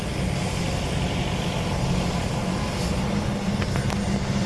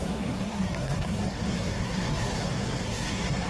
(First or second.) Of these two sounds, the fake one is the second